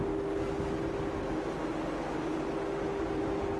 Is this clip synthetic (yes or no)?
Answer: no